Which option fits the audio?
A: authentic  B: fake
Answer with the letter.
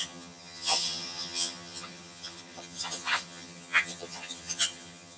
B